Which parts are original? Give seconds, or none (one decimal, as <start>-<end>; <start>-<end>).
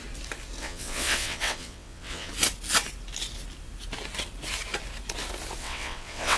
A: 0.0-0.6; 2.3-5.6